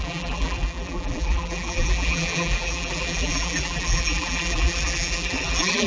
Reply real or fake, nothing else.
fake